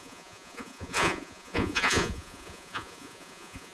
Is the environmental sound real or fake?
fake